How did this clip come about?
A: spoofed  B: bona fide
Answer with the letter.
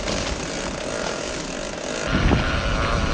B